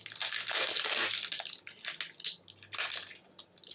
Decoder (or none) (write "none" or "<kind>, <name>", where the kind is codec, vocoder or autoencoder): none